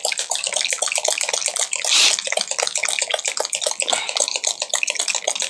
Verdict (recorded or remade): recorded